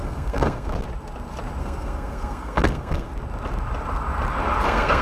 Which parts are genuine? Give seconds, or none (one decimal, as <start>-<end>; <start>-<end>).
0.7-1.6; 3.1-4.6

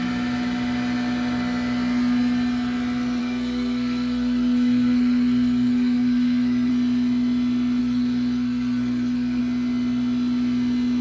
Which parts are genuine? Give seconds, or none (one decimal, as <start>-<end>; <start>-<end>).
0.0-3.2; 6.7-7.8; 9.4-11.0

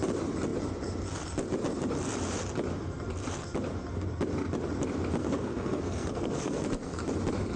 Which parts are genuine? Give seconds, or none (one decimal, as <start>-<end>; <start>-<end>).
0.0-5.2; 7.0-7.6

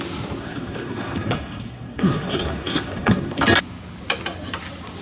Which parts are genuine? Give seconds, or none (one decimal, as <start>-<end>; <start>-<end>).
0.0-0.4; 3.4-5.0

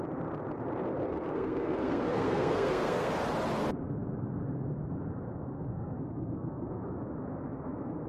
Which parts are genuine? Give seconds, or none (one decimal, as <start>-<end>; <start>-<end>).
0.0-1.1; 3.1-5.7; 6.8-8.1

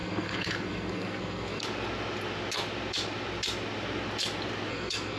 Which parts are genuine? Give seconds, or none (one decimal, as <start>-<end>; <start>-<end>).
1.6-4.7